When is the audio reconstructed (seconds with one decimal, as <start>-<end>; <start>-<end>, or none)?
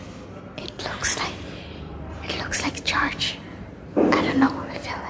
1.0-4.1